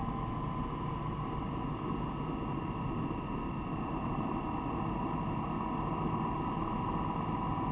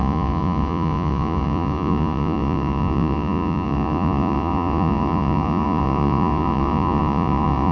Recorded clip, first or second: first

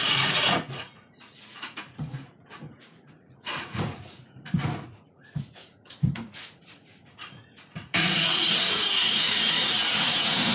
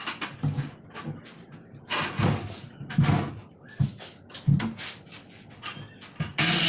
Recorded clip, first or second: second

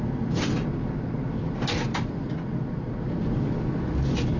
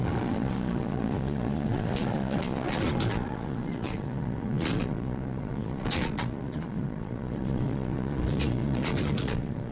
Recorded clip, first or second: first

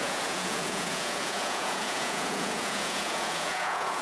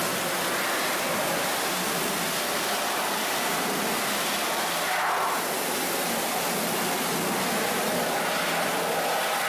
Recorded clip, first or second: second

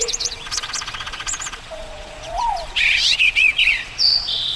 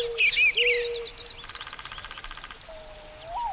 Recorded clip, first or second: second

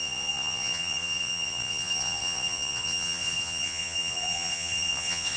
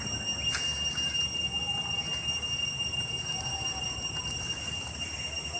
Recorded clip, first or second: second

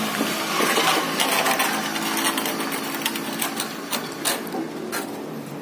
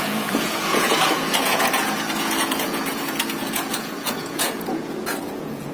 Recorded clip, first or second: first